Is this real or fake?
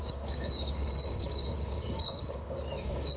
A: fake